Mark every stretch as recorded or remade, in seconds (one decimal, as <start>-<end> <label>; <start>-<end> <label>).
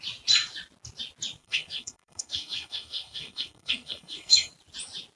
0.0-1.4 recorded; 1.4-4.5 remade; 4.5-5.2 recorded